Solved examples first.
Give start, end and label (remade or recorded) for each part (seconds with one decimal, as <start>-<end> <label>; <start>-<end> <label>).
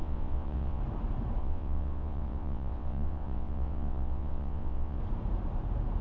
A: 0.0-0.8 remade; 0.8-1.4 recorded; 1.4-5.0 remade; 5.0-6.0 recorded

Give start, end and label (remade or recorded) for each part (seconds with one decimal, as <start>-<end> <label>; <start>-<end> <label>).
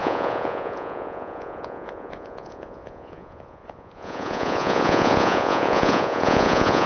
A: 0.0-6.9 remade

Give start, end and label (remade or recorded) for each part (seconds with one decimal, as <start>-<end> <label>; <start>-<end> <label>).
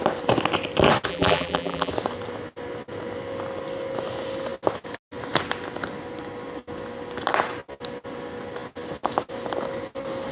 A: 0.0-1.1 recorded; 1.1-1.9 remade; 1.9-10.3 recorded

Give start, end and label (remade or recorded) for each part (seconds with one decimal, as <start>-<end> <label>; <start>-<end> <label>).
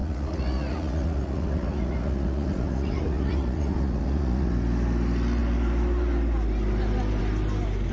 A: 0.0-4.5 remade; 4.5-7.9 recorded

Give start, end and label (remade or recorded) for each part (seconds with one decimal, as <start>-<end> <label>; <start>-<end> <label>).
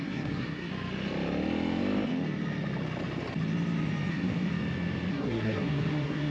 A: 0.0-0.7 remade; 0.7-4.1 recorded; 4.1-4.5 remade; 4.5-5.1 recorded; 5.1-6.3 remade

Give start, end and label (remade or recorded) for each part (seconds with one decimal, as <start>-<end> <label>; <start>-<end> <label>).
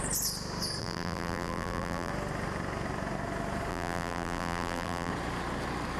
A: 0.0-0.8 recorded; 0.8-2.1 remade; 2.1-3.7 recorded; 3.7-5.1 remade; 5.1-6.0 recorded